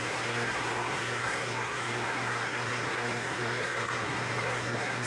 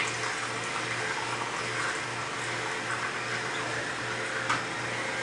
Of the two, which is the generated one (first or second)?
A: first